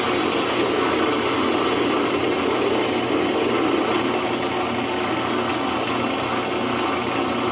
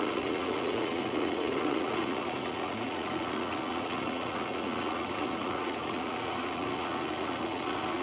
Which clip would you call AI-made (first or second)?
second